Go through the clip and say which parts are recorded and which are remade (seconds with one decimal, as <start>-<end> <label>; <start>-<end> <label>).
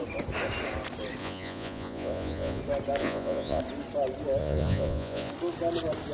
0.0-1.2 recorded; 1.2-2.6 remade; 2.6-3.0 recorded; 3.0-3.6 remade; 3.6-4.4 recorded; 4.4-5.3 remade; 5.3-6.1 recorded